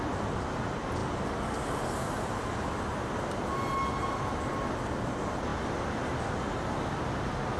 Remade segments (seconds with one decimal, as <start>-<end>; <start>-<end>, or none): none